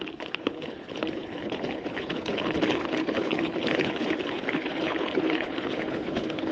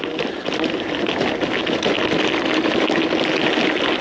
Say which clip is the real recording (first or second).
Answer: second